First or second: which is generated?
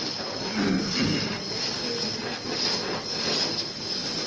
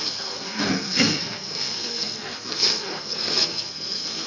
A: second